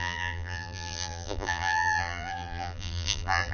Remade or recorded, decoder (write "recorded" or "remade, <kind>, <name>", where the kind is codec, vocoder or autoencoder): remade, vocoder, BigVGAN v2